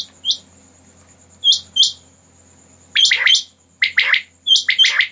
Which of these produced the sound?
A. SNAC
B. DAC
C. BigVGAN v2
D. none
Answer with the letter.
D